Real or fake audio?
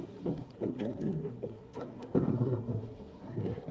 fake